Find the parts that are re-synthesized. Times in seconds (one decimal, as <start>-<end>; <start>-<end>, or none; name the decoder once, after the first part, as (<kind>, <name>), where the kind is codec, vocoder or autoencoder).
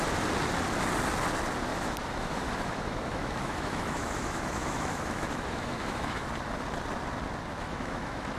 1.7-6.3 (autoencoder, DAC-VAE); 7.5-8.4